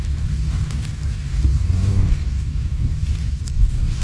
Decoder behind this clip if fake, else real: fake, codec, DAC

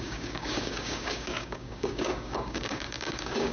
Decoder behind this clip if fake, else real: fake, codec, DAC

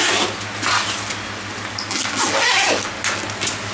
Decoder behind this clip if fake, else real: real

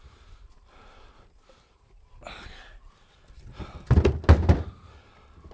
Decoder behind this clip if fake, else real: real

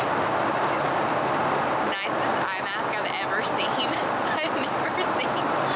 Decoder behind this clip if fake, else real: real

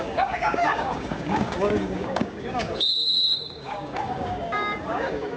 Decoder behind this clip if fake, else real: fake, codec, DAC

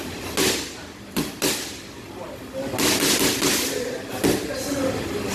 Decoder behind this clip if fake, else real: real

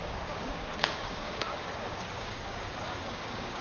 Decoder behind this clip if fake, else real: fake, codec, DAC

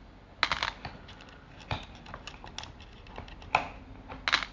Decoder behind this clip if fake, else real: real